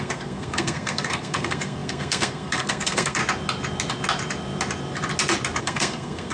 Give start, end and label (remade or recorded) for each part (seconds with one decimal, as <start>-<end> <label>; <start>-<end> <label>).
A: 0.0-3.2 remade; 3.2-5.6 recorded; 5.6-6.3 remade